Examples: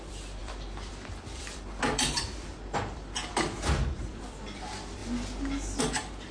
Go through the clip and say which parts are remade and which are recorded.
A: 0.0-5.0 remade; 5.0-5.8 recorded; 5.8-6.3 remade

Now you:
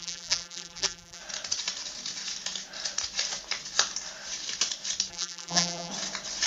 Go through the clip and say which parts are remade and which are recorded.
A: 0.0-1.2 remade; 1.2-5.1 recorded; 5.1-5.9 remade; 5.9-6.5 recorded

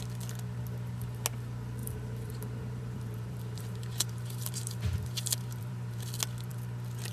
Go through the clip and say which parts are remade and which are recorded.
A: 0.0-1.8 recorded; 1.8-6.0 remade; 6.0-7.1 recorded

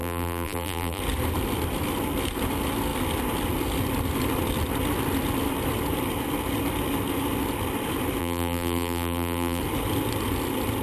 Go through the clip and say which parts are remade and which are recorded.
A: 0.0-1.0 remade; 1.0-8.2 recorded; 8.2-9.6 remade; 9.6-10.8 recorded

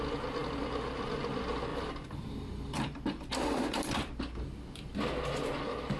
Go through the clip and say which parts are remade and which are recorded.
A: 0.0-0.4 recorded; 0.4-1.2 remade; 1.2-1.7 recorded; 1.7-4.1 remade; 4.1-6.0 recorded

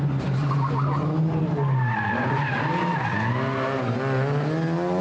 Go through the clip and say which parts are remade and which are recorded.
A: 0.0-1.4 recorded; 1.4-3.3 remade; 3.3-5.0 recorded

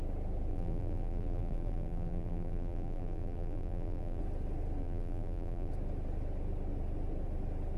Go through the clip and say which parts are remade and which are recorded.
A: 0.0-0.5 recorded; 0.5-4.2 remade; 4.2-4.8 recorded; 4.8-5.7 remade; 5.7-7.8 recorded

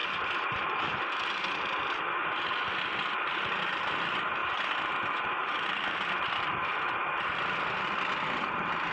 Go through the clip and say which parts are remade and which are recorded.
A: 0.0-1.0 remade; 1.0-4.4 recorded; 4.4-8.9 remade